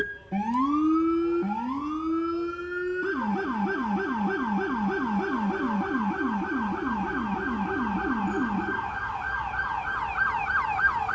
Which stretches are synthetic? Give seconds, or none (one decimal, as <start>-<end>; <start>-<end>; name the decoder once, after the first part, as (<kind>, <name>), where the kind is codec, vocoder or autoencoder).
none